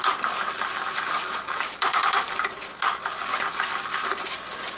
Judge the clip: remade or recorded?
recorded